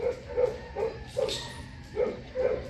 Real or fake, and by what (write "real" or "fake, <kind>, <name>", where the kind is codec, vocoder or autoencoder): real